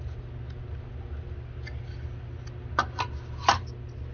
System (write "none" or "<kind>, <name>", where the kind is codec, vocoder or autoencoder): none